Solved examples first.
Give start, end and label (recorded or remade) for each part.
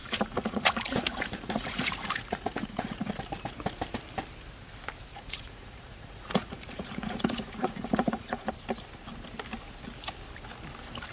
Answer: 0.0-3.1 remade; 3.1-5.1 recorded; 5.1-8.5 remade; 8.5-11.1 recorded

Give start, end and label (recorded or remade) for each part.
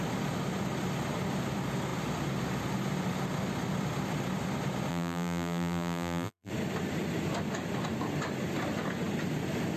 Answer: 0.0-4.9 recorded; 4.9-6.5 remade; 6.5-9.8 recorded